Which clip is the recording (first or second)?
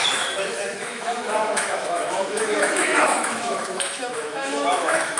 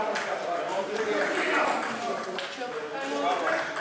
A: second